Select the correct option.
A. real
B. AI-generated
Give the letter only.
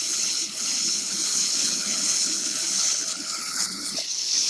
B